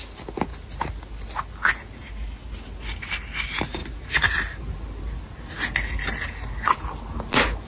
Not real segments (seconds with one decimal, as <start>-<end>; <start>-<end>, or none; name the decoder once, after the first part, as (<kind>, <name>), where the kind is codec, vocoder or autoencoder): none